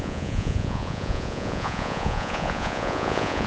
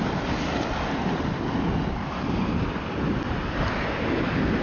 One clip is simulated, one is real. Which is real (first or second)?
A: second